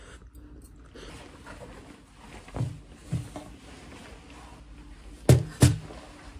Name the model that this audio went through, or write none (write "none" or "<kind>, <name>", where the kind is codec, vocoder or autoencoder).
none